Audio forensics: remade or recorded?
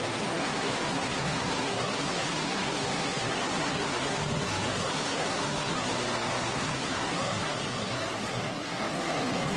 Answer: remade